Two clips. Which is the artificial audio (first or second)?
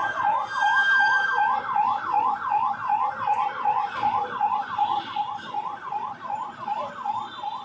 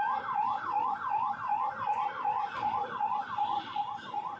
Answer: second